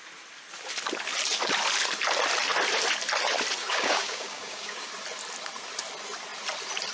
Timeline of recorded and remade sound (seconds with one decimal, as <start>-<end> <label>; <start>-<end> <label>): 0.0-3.6 recorded; 3.6-4.9 remade; 4.9-6.9 recorded